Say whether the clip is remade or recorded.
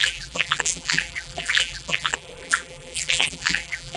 remade